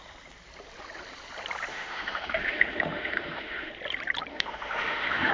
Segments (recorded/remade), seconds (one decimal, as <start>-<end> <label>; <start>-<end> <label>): 0.0-1.7 recorded; 1.7-3.7 remade; 3.7-4.3 recorded; 4.3-5.3 remade

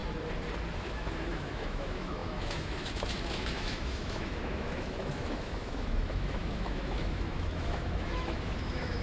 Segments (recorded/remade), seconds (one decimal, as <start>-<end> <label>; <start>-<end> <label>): 0.0-0.8 recorded; 0.8-9.0 remade

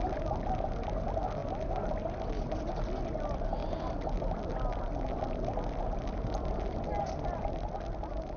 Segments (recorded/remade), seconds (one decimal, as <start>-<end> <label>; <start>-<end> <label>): 0.0-8.4 recorded

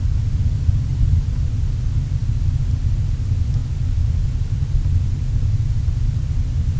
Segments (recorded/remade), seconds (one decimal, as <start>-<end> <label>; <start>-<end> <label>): 0.0-6.8 recorded

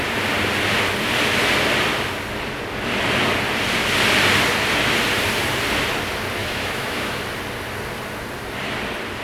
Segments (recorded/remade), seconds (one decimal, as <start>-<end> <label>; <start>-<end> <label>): 0.0-6.4 recorded; 6.4-7.2 remade; 7.2-9.2 recorded